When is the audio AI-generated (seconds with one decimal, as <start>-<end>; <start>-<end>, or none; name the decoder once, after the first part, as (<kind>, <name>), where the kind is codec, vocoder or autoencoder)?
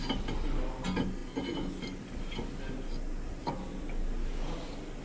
none